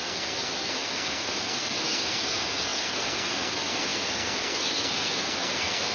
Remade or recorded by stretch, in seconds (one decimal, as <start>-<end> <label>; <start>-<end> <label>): 0.0-5.9 remade